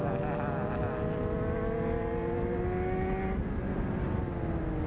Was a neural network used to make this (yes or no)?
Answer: no